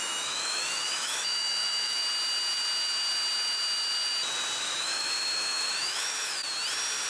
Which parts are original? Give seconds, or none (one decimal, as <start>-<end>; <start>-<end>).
2.0-4.6; 6.4-7.1